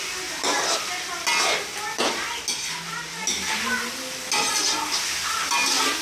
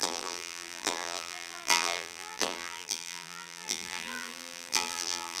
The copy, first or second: second